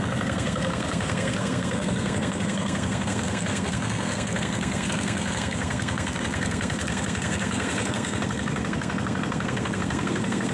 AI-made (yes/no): yes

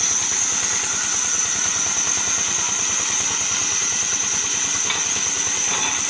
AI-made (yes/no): no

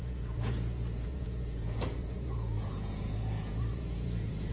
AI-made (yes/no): yes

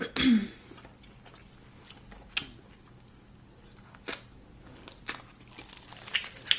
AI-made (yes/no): no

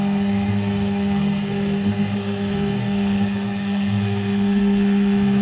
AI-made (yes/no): yes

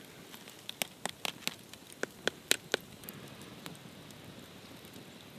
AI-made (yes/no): no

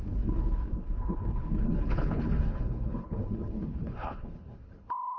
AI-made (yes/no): yes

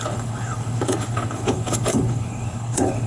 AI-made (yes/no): yes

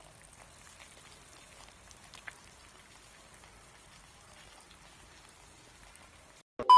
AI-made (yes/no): no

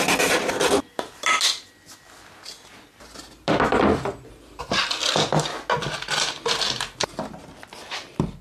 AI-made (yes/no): no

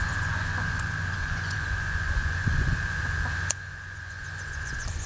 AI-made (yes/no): yes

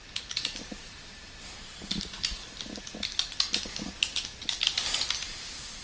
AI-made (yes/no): no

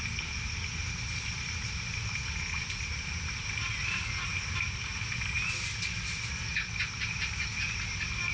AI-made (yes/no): no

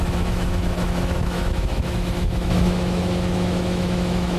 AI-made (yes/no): yes